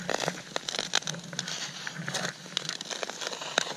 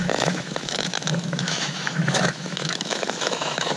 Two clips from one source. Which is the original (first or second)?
first